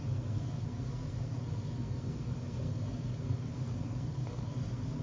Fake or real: fake